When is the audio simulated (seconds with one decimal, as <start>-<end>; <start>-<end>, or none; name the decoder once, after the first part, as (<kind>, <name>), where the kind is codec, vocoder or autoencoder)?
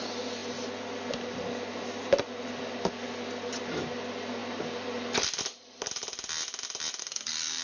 7.0-7.6 (codec, SNAC)